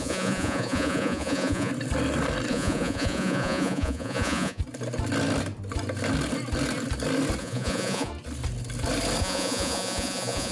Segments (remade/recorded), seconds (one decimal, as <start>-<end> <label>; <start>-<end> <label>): 0.0-1.7 remade; 1.7-2.5 recorded; 2.5-4.6 remade; 4.6-7.4 recorded; 7.4-8.1 remade; 8.1-9.2 recorded; 9.2-10.5 remade